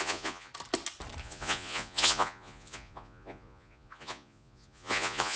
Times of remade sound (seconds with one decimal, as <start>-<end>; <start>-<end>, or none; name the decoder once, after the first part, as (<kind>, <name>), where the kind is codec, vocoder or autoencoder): 0.0-0.5 (vocoder, Vocos); 1.2-5.4